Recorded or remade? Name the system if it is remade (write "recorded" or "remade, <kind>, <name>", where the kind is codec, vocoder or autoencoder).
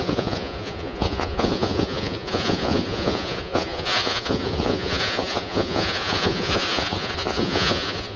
remade, vocoder, Vocos